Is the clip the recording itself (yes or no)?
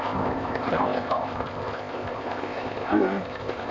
no